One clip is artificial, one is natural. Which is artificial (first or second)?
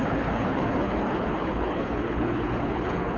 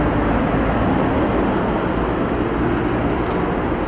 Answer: first